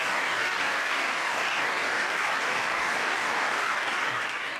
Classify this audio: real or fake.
fake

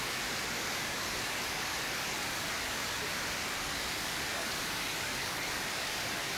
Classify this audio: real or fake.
fake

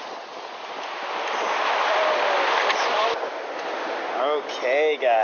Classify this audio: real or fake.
real